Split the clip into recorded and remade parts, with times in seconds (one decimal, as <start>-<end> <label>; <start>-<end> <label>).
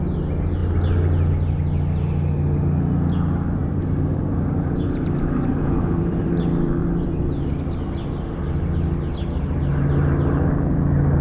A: 0.0-3.6 recorded; 3.6-6.3 remade; 6.3-6.8 recorded; 6.8-7.5 remade; 7.5-11.2 recorded